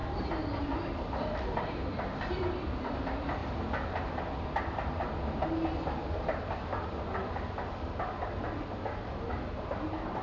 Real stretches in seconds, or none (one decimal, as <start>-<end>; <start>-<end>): 0.0-10.2